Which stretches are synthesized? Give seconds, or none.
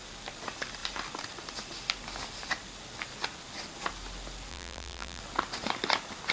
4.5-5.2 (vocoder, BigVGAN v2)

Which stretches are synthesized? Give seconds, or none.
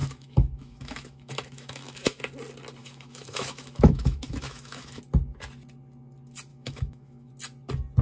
0.0-2.2 (autoencoder, DAC-VAE); 2.8-5.0; 6.5-7.3